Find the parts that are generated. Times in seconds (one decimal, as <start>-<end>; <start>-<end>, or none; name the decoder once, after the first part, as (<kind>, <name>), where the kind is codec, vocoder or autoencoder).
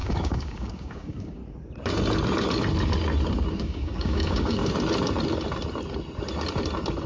0.0-1.4 (codec, DAC); 3.5-4.6